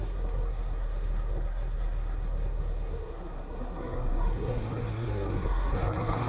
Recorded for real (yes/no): no